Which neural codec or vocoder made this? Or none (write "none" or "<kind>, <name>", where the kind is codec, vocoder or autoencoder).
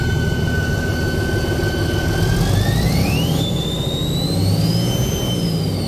none